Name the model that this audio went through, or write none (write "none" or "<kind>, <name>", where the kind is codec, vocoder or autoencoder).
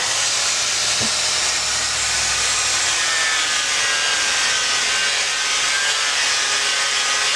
none